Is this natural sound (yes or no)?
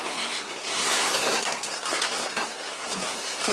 no